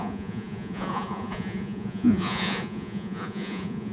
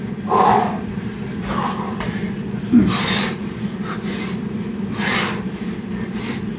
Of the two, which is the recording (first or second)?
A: second